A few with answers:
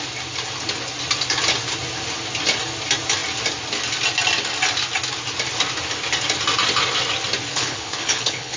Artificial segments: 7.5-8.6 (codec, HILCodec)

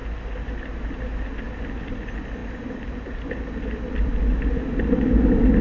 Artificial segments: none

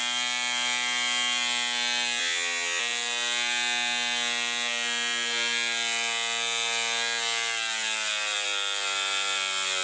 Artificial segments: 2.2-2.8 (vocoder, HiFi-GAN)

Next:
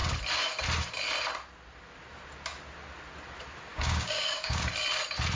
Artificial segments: 3.7-4.6 (codec, DAC)

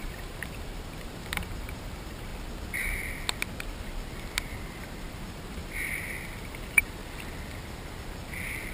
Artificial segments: 0.0-2.3 (vocoder, BigVGAN v2); 5.1-5.6; 6.4-7.0

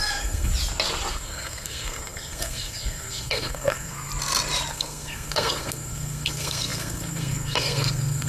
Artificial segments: 0.0-0.5 (codec, SNAC); 1.1-4.1; 4.7-8.3